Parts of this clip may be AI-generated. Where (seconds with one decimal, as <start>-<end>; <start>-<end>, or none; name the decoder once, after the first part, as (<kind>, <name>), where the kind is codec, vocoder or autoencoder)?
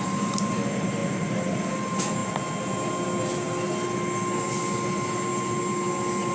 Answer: none